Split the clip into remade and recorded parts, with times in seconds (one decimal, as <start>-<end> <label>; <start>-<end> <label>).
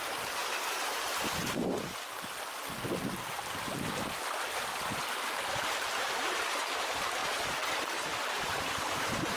0.0-0.4 remade; 0.4-4.9 recorded; 4.9-9.4 remade